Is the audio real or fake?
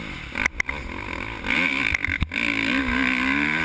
real